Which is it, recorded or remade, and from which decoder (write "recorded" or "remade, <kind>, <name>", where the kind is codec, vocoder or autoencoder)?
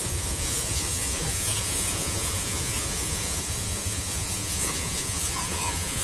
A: remade, vocoder, Vocos